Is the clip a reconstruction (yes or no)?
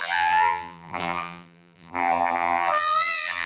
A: yes